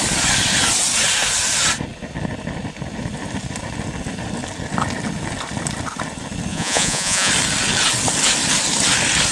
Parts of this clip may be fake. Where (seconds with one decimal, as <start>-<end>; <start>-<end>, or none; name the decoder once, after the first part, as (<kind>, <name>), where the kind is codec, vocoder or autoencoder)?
6.5-7.3 (vocoder, Vocos)